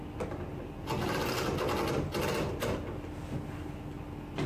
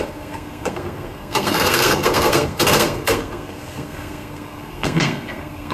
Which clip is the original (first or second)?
first